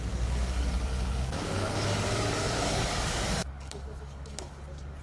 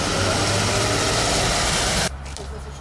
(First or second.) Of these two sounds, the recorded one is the second